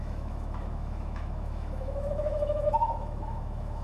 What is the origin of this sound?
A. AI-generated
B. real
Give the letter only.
A